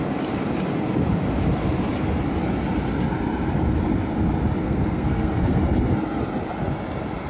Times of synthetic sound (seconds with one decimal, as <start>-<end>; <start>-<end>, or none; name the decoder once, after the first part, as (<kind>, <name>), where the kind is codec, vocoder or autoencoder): 4.6-5.6 (codec, SNAC)